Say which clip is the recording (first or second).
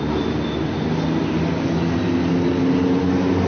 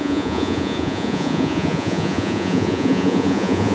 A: first